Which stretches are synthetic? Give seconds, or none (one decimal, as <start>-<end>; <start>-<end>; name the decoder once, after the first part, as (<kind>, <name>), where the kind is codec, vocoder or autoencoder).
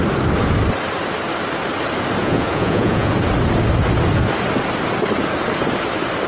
2.2-3.1 (vocoder, Vocos)